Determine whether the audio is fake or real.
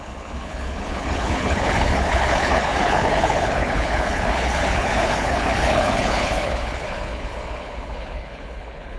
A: fake